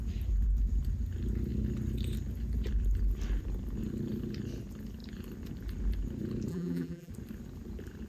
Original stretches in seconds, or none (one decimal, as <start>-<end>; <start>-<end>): 0.0-6.5; 7.1-8.1